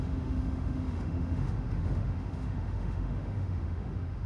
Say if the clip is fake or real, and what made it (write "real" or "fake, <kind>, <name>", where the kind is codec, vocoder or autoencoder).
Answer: fake, autoencoder, DAC-VAE